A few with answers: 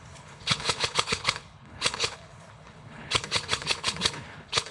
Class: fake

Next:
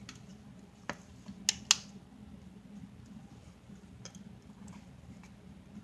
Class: real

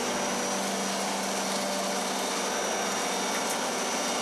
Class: real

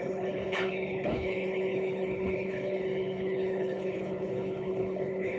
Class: fake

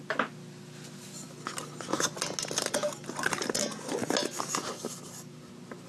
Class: real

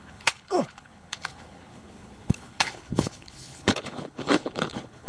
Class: fake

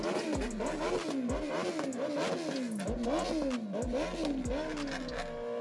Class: real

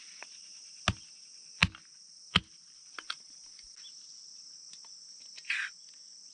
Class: real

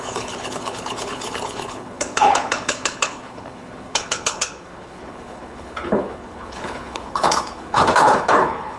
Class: fake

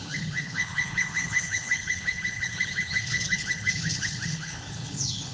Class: fake